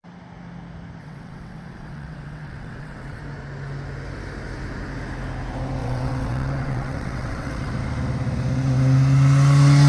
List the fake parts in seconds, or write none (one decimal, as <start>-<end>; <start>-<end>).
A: 1.0-3.2; 5.8-7.7